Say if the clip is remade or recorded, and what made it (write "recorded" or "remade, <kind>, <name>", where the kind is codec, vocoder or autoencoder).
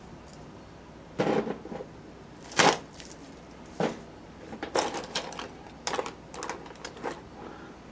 recorded